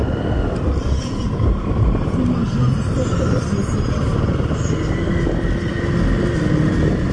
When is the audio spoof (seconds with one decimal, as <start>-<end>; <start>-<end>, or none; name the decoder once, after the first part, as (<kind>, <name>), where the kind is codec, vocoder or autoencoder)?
none